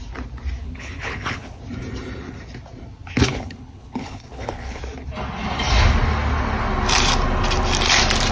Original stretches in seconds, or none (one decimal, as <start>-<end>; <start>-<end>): 0.0-0.6; 1.6-3.3; 4.8-8.3